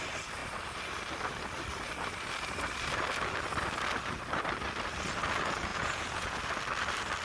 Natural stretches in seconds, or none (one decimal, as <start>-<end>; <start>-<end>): 0.0-5.7; 6.4-7.2

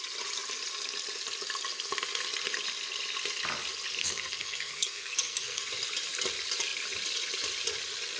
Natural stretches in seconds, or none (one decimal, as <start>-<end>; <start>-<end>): 0.0-4.0; 5.6-8.2

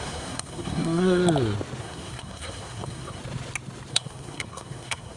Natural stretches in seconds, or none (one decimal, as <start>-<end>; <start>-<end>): 1.2-1.8; 3.2-3.9

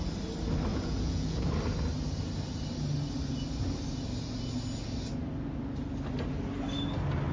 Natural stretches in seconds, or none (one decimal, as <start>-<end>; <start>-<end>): 0.0-0.7; 1.5-7.3

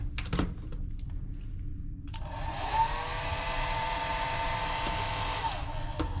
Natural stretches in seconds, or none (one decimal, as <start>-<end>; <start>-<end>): 0.0-1.7; 5.1-6.2

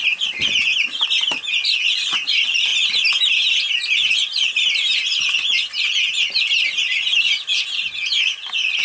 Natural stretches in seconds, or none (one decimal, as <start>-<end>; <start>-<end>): 0.0-8.8